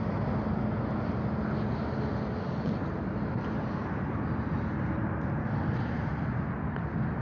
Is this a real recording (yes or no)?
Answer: yes